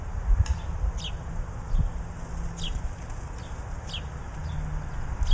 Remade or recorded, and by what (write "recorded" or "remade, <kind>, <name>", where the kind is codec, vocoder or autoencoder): recorded